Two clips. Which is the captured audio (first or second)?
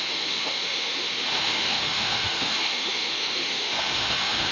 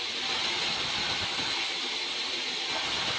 second